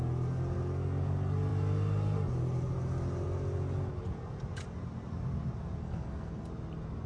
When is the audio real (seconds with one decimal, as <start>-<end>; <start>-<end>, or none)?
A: 0.0-5.8; 6.5-7.1